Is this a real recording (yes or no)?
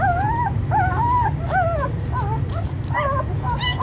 yes